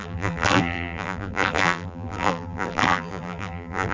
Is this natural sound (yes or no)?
no